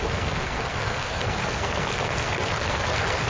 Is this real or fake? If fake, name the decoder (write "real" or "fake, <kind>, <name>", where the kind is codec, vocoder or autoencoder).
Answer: fake, codec, SNAC